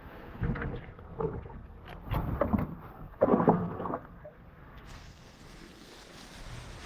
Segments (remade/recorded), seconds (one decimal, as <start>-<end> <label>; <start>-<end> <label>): 0.0-1.8 remade; 1.8-2.9 recorded; 2.9-5.9 remade; 5.9-6.9 recorded